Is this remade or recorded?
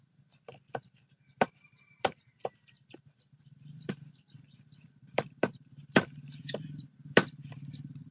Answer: remade